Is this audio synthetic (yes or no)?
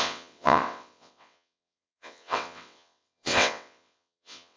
yes